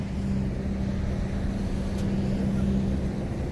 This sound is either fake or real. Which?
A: real